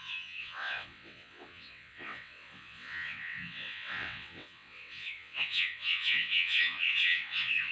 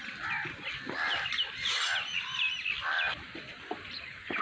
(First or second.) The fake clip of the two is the first